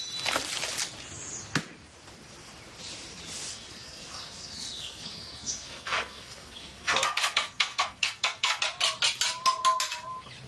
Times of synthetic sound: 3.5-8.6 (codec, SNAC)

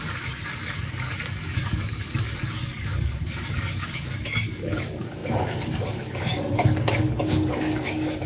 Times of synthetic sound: 0.0-8.3 (codec, DAC)

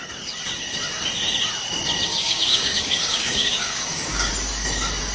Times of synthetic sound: 2.1-4.3 (codec, DAC)

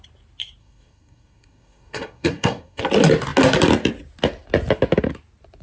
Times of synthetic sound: 0.6-2.8 (codec, SNAC)